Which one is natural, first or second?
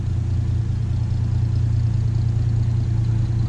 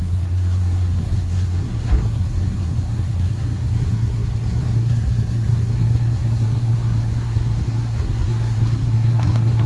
first